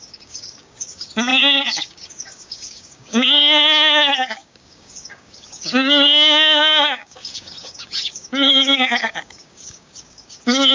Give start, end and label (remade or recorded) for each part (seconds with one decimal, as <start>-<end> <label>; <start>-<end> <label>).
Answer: 0.0-10.7 remade